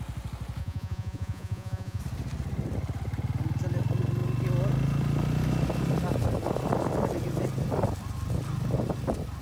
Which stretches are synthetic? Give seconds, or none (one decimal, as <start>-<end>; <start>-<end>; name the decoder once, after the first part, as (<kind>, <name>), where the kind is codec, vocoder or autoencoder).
0.6-2.0 (vocoder, Vocos)